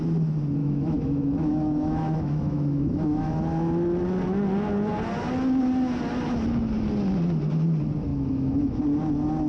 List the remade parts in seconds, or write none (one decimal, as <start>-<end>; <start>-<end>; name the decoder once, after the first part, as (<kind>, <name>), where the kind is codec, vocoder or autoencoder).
0.6-3.3 (autoencoder, DAC-VAE); 8.1-8.8